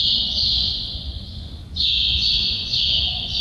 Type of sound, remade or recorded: remade